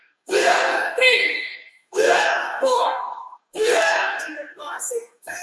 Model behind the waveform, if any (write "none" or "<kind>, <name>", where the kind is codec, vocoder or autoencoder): codec, DAC